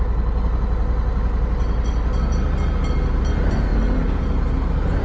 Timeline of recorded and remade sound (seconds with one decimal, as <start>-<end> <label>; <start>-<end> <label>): 0.0-5.0 recorded